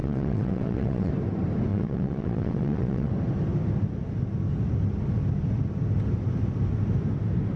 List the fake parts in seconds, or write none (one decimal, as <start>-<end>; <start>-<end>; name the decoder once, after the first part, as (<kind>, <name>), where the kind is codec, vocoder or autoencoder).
0.0-1.1 (vocoder, WaveNeXt); 1.7-3.1